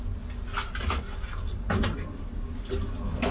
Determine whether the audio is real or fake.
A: real